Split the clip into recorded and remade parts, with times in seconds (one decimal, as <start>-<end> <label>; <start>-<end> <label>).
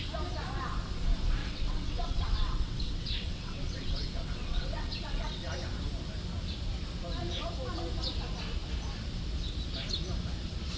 0.0-1.4 recorded; 1.4-5.5 remade; 5.5-10.8 recorded